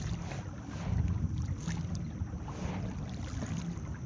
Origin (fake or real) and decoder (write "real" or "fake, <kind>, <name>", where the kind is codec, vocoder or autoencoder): real